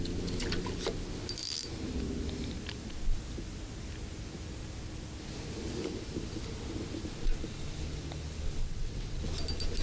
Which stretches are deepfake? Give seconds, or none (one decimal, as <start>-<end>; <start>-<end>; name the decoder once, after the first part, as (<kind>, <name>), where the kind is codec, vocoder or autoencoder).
8.6-9.2 (vocoder, WaveNeXt)